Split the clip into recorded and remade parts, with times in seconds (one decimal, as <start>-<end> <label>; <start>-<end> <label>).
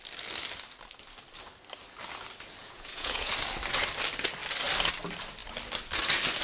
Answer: 0.0-2.6 recorded; 2.6-3.3 remade; 3.3-6.4 recorded